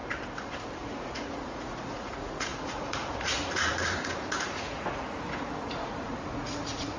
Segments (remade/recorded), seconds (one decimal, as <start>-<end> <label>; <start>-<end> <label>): 0.0-0.6 recorded; 0.6-7.0 remade